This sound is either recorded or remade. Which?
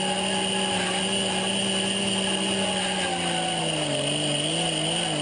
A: recorded